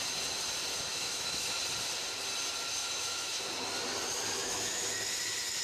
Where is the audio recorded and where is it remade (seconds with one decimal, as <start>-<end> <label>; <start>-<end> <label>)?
0.0-0.9 recorded; 0.9-1.6 remade; 1.6-2.8 recorded; 2.8-3.4 remade; 3.4-4.4 recorded; 4.4-4.9 remade; 4.9-5.6 recorded